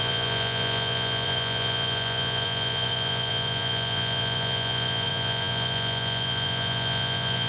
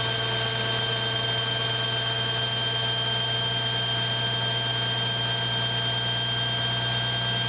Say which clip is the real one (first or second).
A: second